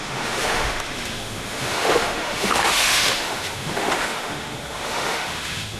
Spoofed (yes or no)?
yes